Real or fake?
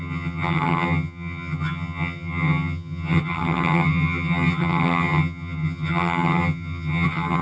fake